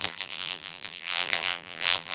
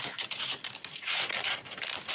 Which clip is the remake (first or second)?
first